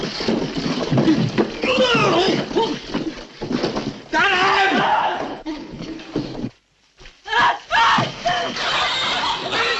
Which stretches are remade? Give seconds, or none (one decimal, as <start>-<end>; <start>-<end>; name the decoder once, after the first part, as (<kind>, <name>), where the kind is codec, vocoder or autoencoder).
4.9-6.0 (codec, HILCodec)